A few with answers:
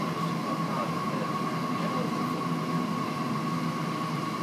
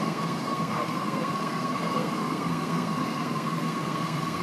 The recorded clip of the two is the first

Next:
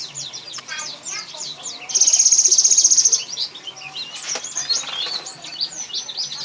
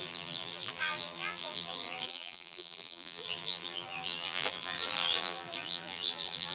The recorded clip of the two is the first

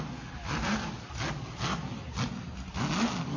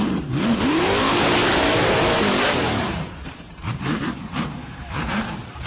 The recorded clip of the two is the first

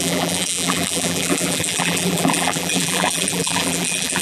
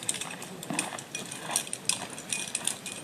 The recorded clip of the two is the second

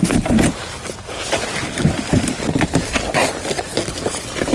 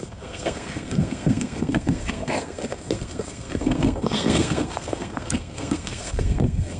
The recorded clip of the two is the first